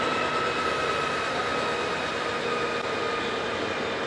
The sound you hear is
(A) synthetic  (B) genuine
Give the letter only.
B